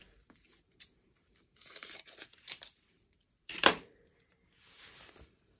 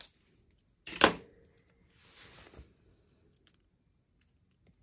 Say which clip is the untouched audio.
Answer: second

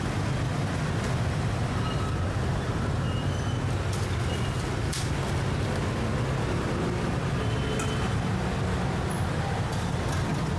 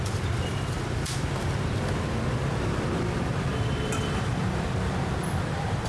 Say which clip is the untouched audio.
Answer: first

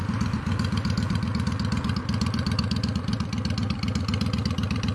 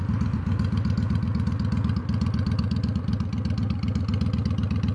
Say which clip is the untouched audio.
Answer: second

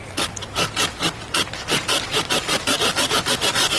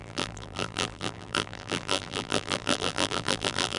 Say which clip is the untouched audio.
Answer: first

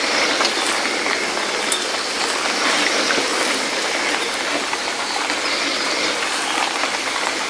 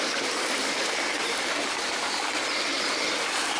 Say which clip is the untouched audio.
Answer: first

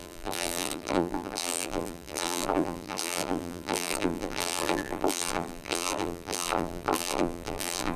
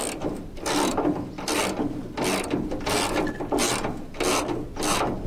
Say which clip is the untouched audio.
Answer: second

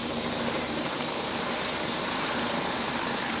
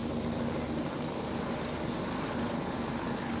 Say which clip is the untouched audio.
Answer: second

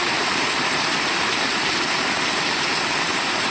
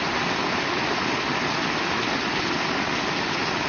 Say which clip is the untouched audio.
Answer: second